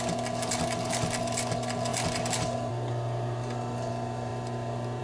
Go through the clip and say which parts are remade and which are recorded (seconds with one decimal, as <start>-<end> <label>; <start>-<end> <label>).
0.0-5.0 recorded

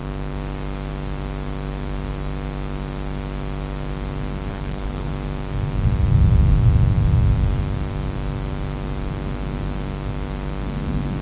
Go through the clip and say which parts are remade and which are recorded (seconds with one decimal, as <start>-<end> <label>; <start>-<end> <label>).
0.0-4.5 recorded; 4.5-5.1 remade; 5.1-11.2 recorded